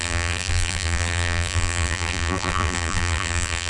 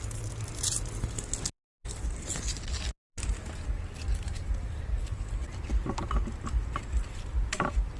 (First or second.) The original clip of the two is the second